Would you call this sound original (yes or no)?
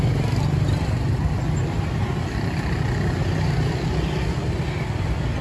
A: yes